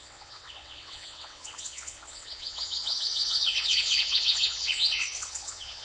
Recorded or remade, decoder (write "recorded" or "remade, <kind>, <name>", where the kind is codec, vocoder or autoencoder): remade, vocoder, WaveNeXt